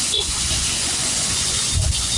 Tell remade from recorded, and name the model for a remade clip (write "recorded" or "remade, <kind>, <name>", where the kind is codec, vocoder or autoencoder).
remade, vocoder, Vocos